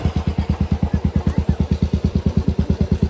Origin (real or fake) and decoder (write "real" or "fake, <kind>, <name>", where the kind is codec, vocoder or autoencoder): real